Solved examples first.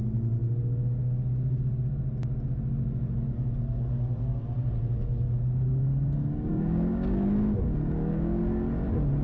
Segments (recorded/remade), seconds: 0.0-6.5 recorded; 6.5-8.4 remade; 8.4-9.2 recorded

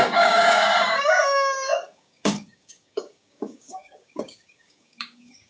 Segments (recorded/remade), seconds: 0.0-5.5 remade